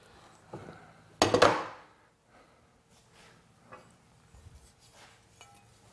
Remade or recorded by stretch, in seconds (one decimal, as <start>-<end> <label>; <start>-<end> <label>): 0.0-5.9 recorded